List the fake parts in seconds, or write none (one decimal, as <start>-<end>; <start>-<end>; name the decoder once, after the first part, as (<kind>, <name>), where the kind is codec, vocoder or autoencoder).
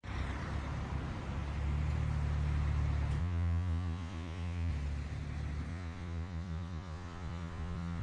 3.2-4.7 (vocoder, Vocos); 5.7-8.0